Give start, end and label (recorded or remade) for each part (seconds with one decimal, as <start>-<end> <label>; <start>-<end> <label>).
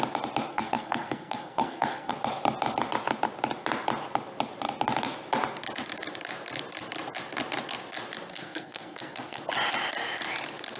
0.0-0.5 recorded; 0.5-2.1 remade; 2.1-8.3 recorded; 8.3-9.4 remade; 9.4-10.8 recorded